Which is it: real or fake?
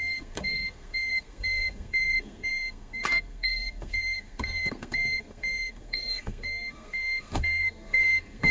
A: fake